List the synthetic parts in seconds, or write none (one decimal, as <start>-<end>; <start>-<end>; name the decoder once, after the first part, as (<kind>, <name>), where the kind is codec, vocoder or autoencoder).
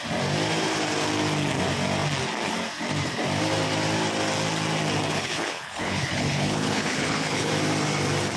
5.1-7.5 (codec, HILCodec)